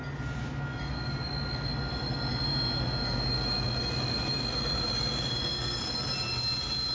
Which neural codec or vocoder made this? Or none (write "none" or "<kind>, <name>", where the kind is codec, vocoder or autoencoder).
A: none